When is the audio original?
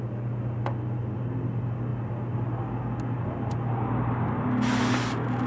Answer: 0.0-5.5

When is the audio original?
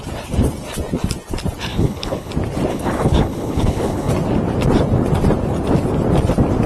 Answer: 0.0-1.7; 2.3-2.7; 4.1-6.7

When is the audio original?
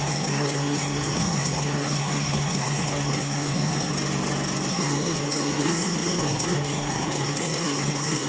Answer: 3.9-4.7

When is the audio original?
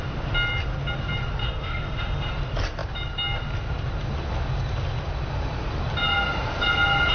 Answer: 0.0-1.4; 2.3-7.1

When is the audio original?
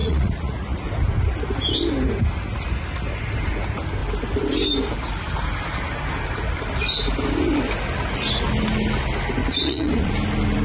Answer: 0.8-9.4; 10.1-10.6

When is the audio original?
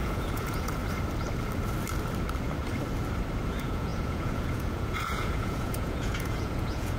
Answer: 0.8-3.5